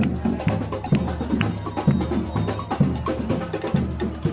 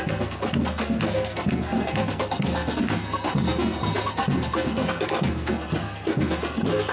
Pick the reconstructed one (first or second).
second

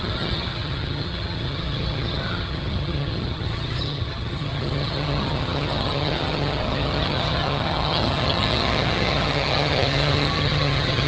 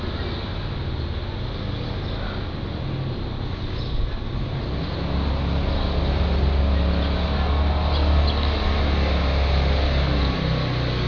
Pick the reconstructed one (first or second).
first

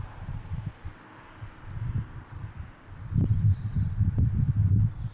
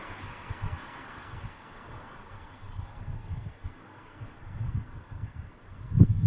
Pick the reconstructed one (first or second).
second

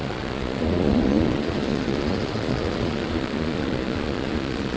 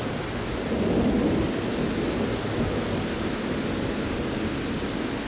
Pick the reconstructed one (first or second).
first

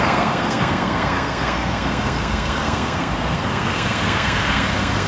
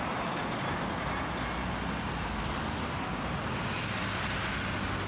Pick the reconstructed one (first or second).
first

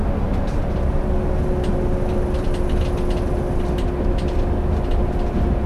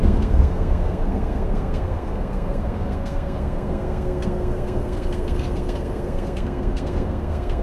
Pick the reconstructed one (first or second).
second